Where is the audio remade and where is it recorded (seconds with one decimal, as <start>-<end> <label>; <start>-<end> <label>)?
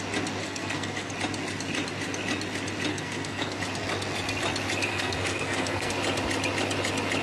0.0-0.4 recorded; 0.4-1.1 remade; 1.1-2.9 recorded; 2.9-3.6 remade; 3.6-4.9 recorded; 4.9-5.9 remade; 5.9-7.2 recorded